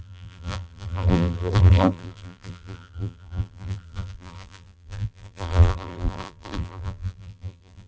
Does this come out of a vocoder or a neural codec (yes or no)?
yes